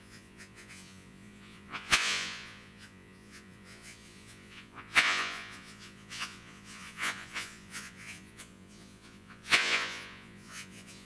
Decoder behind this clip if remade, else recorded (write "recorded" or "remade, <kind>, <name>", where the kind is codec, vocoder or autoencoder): remade, vocoder, Vocos